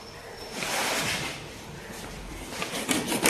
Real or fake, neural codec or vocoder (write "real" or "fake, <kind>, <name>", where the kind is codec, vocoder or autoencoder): fake, vocoder, BigVGAN v2